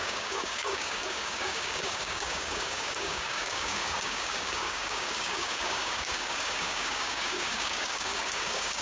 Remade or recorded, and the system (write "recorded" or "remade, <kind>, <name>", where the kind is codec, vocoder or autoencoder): remade, codec, DAC